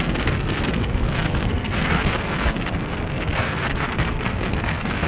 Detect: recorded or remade remade